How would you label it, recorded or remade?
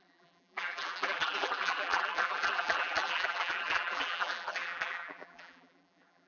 remade